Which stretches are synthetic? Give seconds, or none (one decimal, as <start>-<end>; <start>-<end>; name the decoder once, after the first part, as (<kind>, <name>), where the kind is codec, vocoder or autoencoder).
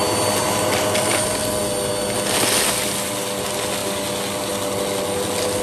none